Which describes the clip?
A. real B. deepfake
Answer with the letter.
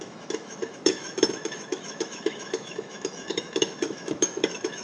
B